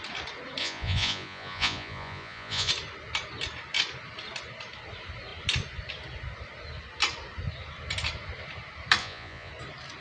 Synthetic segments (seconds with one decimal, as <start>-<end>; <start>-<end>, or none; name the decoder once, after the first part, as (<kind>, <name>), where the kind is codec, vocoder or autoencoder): 0.6-2.7 (vocoder, Vocos); 9.0-9.5